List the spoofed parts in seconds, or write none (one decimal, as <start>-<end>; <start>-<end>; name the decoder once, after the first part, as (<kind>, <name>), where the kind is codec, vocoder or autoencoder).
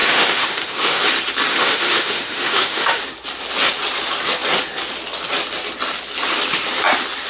0.0-1.0 (autoencoder, DAC-VAE); 1.5-3.0